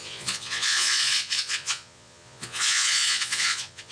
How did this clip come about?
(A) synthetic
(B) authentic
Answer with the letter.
A